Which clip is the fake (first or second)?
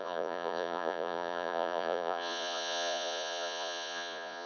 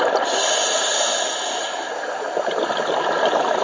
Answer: first